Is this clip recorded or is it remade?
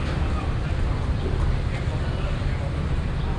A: recorded